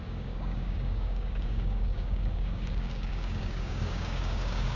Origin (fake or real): fake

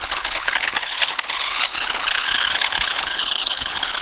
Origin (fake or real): fake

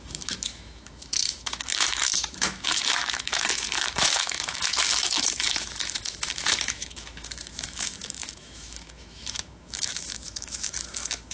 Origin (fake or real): fake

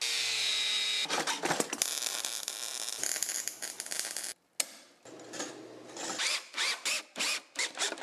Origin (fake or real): real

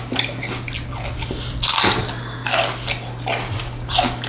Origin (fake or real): real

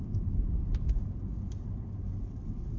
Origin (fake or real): real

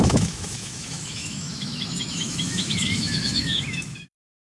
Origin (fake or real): fake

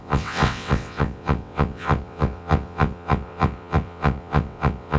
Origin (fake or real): fake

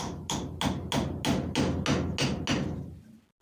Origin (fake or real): real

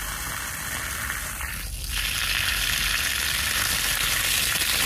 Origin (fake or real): real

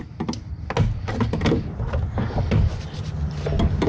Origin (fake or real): real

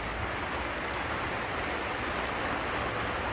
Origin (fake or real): real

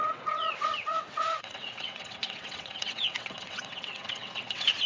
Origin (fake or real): fake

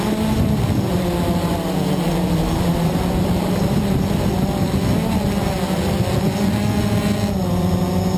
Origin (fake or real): real